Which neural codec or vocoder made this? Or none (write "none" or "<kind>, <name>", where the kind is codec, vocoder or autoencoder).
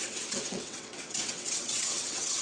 vocoder, WaveNeXt